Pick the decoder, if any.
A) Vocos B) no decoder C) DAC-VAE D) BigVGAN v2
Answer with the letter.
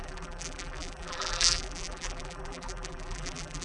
D